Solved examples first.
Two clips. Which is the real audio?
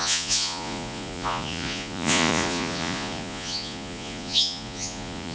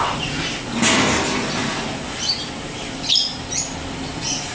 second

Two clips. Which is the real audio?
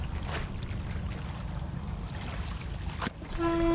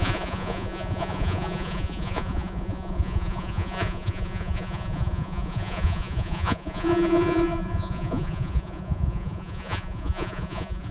first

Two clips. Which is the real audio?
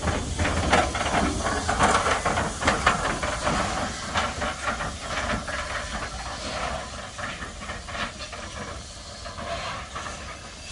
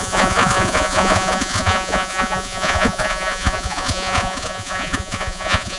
first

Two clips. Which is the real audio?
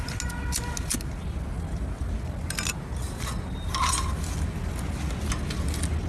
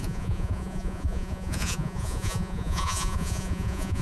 first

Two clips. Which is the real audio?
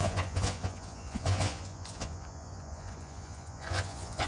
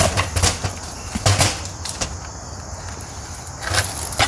second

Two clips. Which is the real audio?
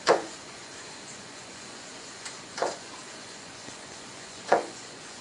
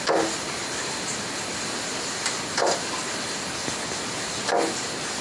second